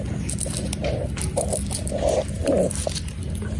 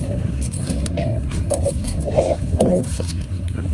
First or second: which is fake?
second